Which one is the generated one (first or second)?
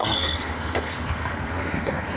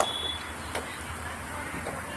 first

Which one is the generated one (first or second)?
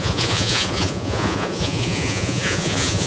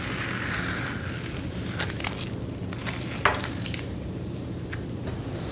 first